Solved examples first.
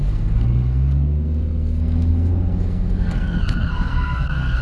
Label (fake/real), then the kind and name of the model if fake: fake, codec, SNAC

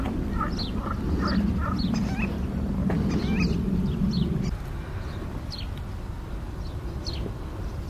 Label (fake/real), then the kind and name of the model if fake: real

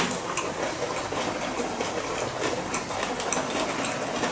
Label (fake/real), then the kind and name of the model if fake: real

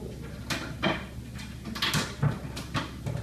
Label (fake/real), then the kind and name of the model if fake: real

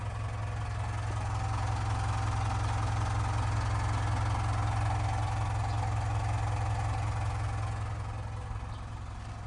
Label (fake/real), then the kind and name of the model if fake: real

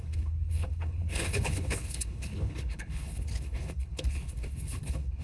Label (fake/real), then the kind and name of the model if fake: fake, codec, HILCodec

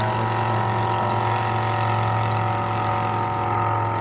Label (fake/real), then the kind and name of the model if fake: real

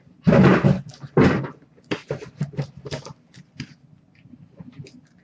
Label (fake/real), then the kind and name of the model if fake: real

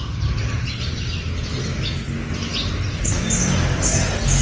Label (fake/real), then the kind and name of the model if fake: real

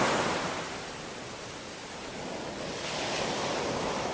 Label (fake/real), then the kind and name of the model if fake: real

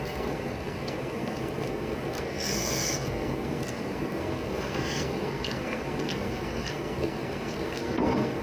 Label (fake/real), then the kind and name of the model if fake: fake, codec, SNAC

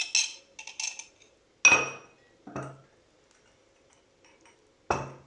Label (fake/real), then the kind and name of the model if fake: real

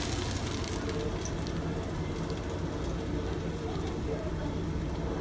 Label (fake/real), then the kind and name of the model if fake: real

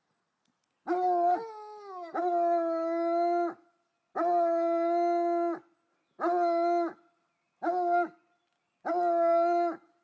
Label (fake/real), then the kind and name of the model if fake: real